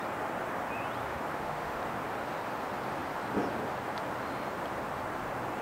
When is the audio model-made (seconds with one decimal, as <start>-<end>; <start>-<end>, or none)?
1.0-1.8

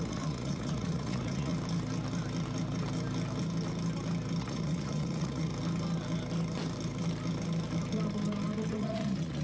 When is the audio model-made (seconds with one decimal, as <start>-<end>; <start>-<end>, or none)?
0.0-1.5; 4.4-5.5; 8.7-9.4

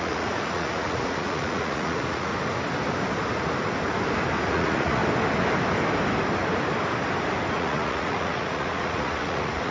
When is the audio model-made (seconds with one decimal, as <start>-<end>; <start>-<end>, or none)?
0.0-2.3; 4.5-5.0; 7.5-9.7

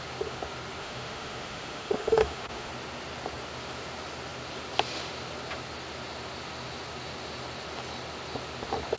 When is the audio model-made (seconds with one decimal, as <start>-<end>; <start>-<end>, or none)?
0.8-2.7

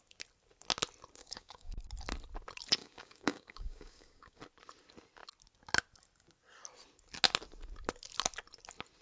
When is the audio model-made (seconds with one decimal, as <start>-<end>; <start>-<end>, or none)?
1.2-1.8; 2.8-4.4

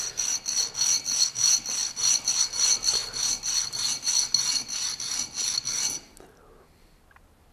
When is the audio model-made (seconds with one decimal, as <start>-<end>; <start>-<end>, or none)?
none

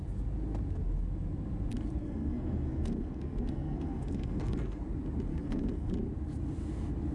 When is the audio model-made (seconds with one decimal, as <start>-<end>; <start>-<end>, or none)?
2.0-4.8; 5.3-5.9